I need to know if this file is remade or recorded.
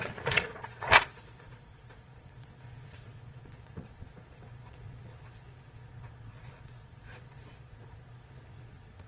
remade